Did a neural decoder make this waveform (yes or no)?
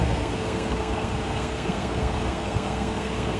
yes